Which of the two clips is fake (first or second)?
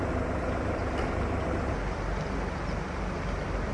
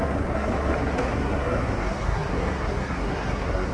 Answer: second